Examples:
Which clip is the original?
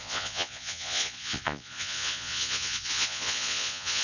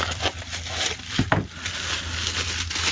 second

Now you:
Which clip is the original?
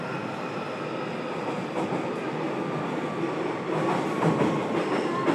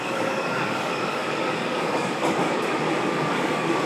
first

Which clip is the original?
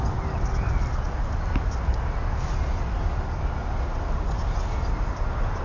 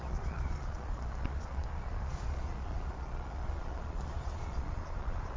first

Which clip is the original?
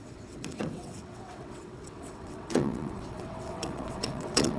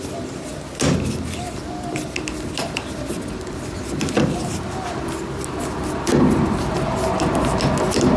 second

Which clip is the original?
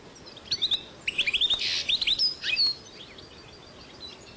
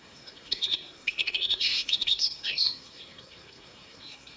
first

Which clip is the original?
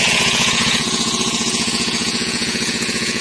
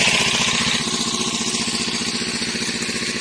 second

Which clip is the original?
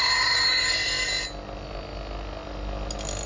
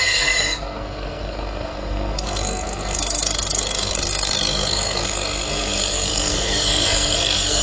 first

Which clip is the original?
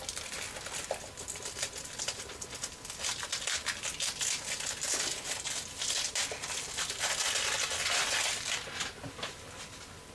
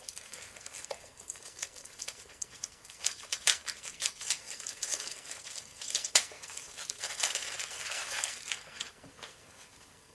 first